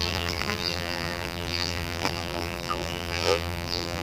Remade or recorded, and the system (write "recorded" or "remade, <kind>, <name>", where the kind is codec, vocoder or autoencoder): remade, vocoder, BigVGAN v2